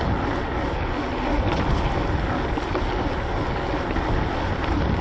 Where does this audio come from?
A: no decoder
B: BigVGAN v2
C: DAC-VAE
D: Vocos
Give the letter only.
A